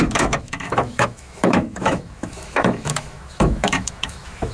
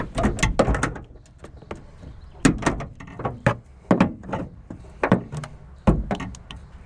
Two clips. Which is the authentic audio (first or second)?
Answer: second